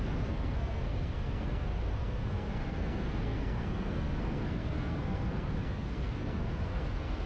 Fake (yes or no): yes